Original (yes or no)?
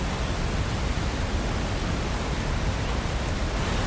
yes